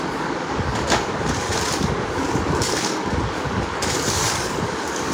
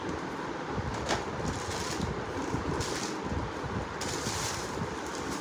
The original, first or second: second